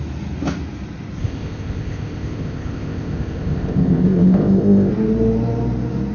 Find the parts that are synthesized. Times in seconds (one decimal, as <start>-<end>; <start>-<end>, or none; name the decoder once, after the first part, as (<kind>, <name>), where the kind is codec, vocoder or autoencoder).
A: 1.2-4.9 (codec, ZipCodec)